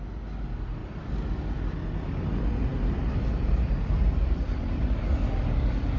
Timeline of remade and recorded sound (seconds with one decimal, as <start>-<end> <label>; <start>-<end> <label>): 0.0-0.8 recorded; 0.8-1.4 remade; 1.4-2.7 recorded; 2.7-5.0 remade; 5.0-6.0 recorded